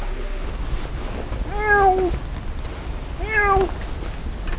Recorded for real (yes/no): yes